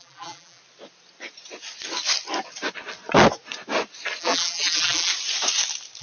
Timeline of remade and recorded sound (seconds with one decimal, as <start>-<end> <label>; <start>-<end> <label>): 0.0-0.6 remade; 0.6-4.2 recorded; 4.2-5.1 remade; 5.1-6.0 recorded